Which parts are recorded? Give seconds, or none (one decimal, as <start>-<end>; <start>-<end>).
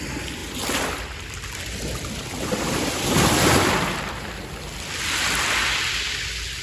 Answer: 0.0-0.4; 4.4-6.6